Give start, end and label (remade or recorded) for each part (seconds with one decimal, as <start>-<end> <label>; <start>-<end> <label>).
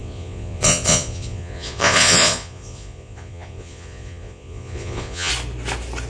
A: 0.0-5.3 remade; 5.3-6.1 recorded